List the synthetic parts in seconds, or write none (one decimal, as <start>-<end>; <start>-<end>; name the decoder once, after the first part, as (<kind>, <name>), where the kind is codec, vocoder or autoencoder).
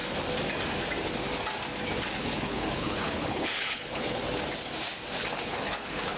2.2-4.2 (codec, HILCodec); 5.2-6.2